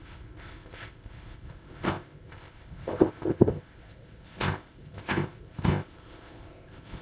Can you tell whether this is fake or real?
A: fake